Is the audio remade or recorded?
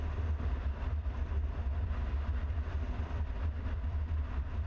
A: remade